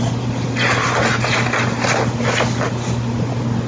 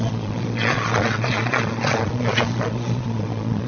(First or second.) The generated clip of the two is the second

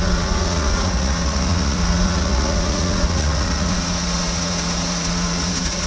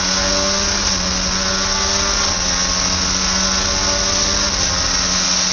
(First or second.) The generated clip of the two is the first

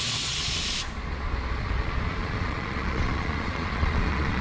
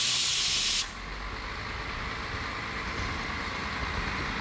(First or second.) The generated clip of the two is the first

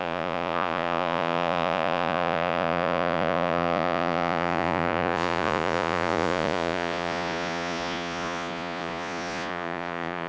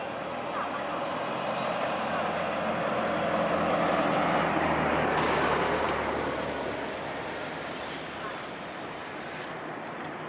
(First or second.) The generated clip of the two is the first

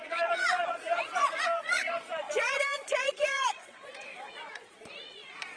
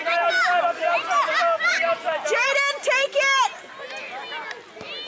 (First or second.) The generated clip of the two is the first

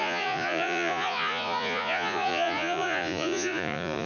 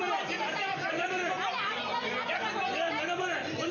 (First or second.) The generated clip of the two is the first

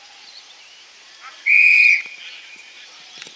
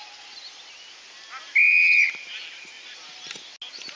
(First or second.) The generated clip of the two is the first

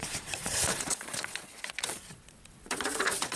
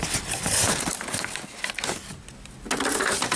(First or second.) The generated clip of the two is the first